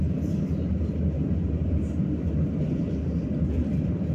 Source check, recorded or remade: recorded